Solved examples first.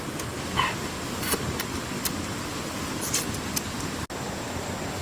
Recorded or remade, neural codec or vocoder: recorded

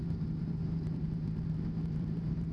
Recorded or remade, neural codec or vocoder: remade, vocoder, BigVGAN v2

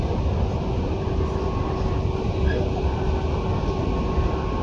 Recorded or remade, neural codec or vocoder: recorded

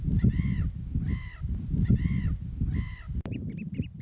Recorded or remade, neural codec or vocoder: remade, vocoder, BigVGAN v2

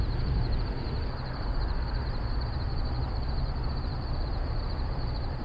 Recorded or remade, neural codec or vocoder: remade, vocoder, BigVGAN v2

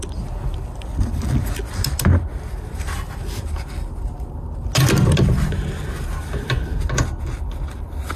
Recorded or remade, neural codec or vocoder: recorded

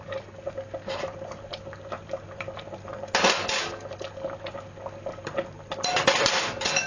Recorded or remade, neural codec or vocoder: recorded